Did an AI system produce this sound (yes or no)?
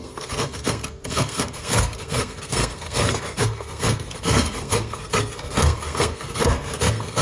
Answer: yes